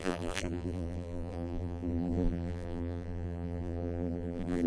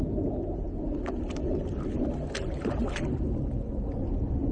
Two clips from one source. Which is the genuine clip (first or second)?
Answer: second